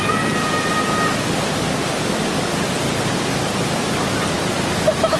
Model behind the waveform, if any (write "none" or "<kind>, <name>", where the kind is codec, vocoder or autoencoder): none